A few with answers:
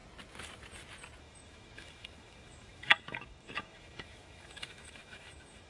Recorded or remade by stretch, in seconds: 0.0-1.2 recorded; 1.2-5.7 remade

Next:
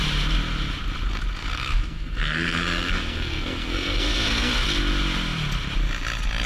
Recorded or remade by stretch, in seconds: 0.0-1.4 recorded; 1.4-4.5 remade; 4.5-6.5 recorded

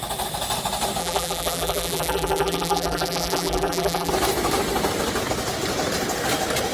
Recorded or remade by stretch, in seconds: 0.0-1.0 recorded; 1.0-4.1 remade; 4.1-6.7 recorded

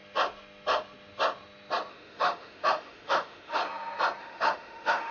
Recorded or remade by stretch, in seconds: 0.0-1.9 recorded; 1.9-3.6 remade; 3.6-4.2 recorded; 4.2-5.1 remade

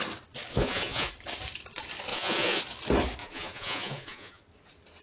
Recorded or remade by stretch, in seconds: 0.0-0.5 recorded; 0.5-1.1 remade; 1.1-2.1 recorded; 2.1-2.6 remade; 2.6-3.2 recorded; 3.2-4.4 remade; 4.4-5.0 recorded

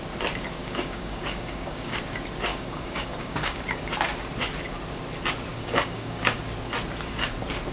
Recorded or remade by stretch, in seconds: 0.0-0.6 recorded; 0.6-2.0 remade; 2.0-2.5 recorded; 2.5-3.9 remade; 3.9-5.5 recorded; 5.5-6.4 remade; 6.4-7.7 recorded